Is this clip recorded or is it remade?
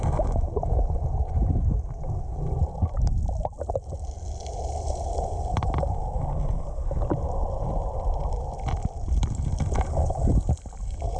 recorded